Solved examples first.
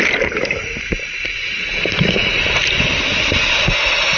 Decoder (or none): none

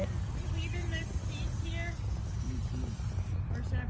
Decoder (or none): none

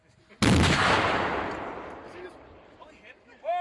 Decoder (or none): none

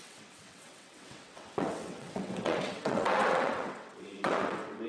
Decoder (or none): vocoder, WaveNeXt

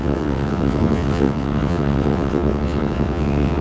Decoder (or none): vocoder, WaveNeXt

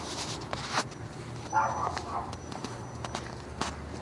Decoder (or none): none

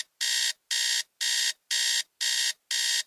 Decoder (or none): none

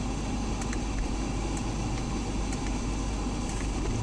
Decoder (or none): none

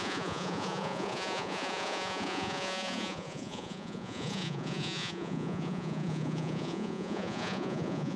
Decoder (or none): vocoder, Vocos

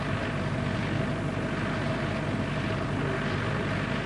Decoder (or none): none